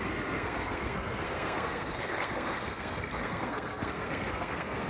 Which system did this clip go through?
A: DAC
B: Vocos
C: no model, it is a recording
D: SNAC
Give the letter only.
D